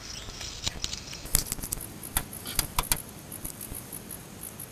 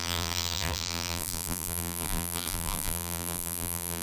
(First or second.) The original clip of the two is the first